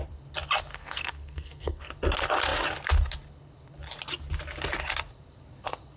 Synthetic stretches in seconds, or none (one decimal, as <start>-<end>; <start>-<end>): 0.7-1.9